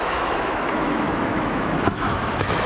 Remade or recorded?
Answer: remade